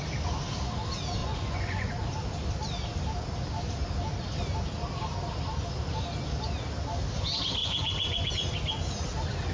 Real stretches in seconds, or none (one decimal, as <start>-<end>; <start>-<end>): 0.0-1.2; 1.9-7.6; 8.3-9.5